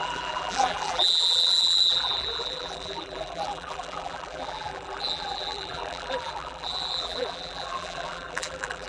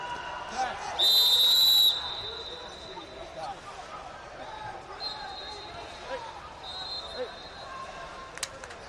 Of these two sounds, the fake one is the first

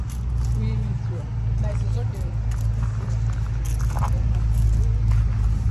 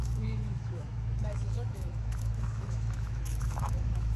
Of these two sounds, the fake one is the second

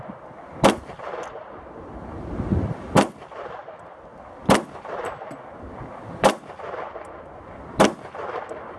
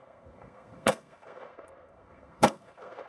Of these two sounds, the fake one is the second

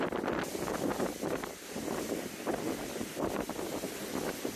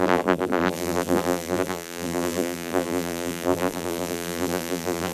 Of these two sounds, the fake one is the second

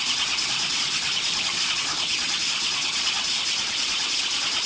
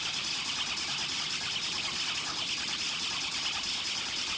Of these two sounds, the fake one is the first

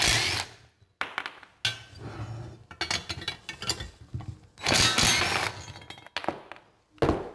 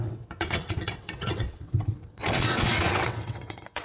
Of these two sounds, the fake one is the second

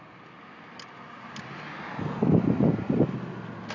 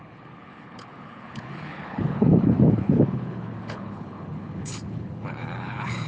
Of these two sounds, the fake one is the second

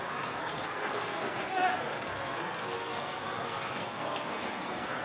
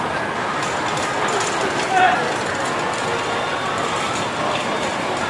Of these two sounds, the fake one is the first